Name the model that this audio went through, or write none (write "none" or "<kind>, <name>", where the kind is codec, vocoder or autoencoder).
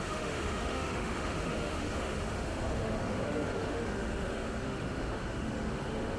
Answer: autoencoder, DAC-VAE